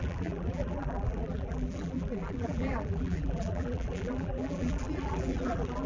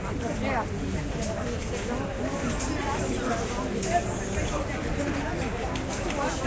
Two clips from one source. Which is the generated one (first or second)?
first